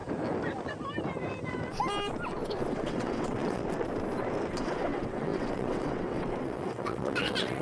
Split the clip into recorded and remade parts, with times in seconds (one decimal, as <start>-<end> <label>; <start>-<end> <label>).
0.0-2.7 recorded; 2.7-3.6 remade; 3.6-4.5 recorded; 4.5-7.6 remade